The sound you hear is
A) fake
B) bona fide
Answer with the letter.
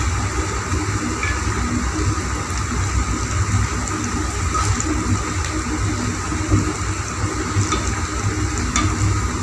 B